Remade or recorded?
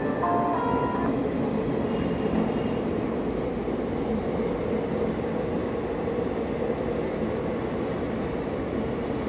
recorded